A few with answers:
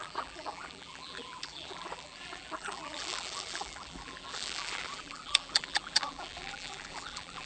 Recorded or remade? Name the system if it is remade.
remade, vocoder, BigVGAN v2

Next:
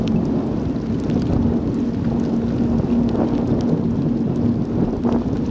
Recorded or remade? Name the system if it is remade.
recorded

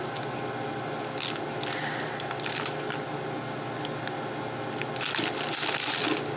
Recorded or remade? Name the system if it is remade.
recorded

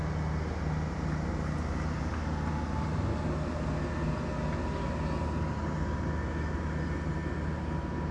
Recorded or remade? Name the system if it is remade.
recorded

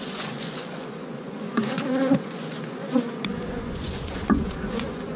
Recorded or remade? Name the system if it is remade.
remade, vocoder, Vocos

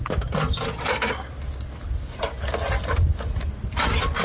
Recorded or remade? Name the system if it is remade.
recorded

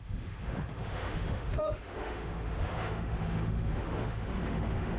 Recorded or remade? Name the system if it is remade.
remade, autoencoder, DAC-VAE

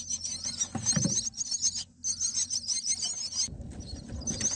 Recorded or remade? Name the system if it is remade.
recorded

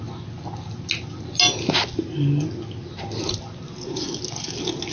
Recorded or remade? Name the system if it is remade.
recorded